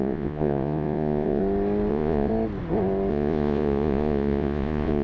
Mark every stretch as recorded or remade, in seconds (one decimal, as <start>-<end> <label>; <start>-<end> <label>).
0.0-1.4 remade; 1.4-1.9 recorded; 1.9-2.3 remade; 2.3-3.1 recorded; 3.1-5.0 remade